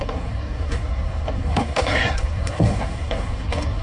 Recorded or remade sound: remade